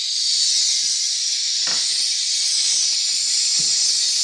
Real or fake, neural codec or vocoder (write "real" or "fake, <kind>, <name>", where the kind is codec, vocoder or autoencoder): real